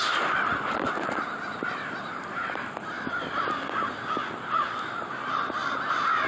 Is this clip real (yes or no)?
yes